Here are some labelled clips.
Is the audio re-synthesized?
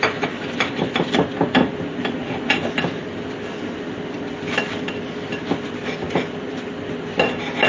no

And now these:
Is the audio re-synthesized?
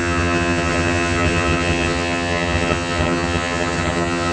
yes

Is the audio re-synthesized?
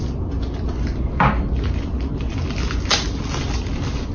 no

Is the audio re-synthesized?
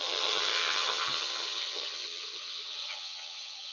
yes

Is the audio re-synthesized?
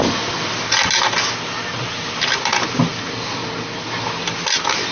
no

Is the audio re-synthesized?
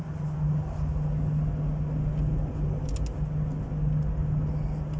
no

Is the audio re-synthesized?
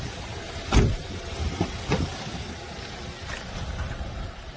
no